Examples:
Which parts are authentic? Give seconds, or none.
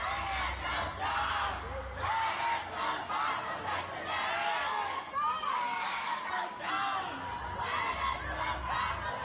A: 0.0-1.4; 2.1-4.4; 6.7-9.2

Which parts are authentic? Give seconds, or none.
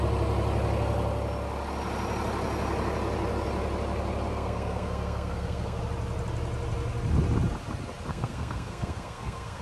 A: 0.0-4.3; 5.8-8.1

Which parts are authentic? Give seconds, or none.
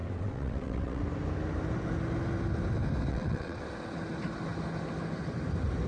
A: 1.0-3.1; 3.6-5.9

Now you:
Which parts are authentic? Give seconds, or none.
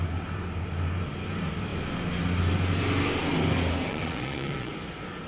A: 0.0-3.9; 4.7-5.3